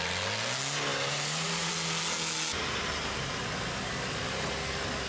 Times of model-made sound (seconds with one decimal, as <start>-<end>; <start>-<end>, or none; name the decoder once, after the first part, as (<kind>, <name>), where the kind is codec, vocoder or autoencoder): 0.9-1.7 (vocoder, BigVGAN v2); 2.5-3.4